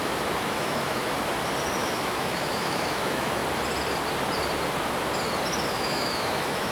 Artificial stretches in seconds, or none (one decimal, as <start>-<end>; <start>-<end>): 0.0-1.0; 1.8-3.4; 5.7-6.7